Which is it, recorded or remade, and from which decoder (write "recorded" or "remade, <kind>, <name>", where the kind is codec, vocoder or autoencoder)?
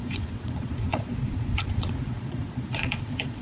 remade, vocoder, Vocos